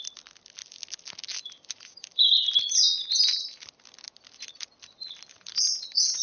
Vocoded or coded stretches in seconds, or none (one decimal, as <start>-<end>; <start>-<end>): none